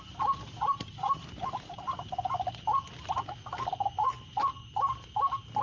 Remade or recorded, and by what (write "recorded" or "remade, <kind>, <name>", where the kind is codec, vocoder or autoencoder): recorded